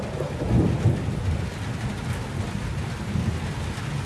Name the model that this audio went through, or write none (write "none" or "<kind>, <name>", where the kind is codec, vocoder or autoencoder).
none